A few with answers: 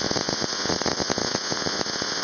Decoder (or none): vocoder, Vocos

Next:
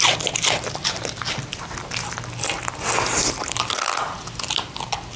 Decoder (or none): none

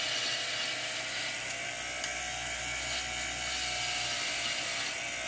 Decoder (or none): none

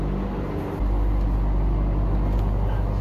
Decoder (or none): none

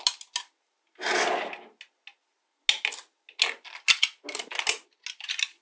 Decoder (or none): none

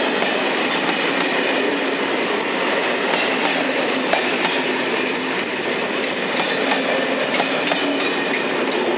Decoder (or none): none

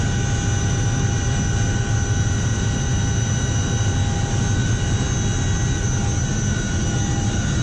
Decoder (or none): none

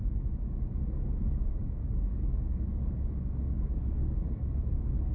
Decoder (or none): codec, DAC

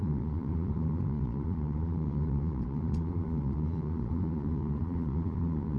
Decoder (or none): vocoder, Vocos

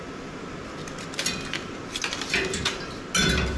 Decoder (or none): none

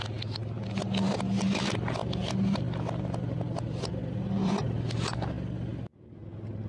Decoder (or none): none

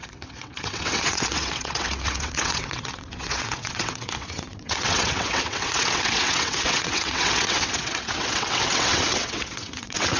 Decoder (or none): vocoder, WaveNeXt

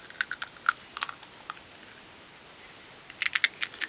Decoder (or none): none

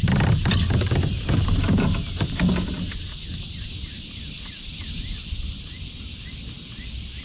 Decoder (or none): none